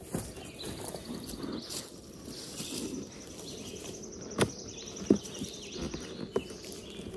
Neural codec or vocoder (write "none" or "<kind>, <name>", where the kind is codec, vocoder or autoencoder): none